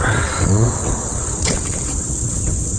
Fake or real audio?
fake